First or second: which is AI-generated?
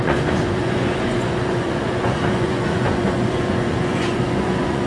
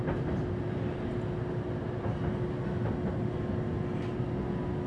first